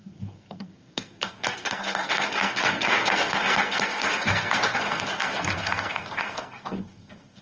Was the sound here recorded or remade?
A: remade